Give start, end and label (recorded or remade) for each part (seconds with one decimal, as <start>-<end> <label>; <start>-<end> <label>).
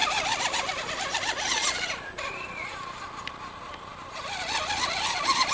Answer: 0.0-5.5 recorded